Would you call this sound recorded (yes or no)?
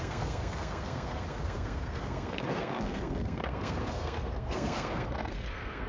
no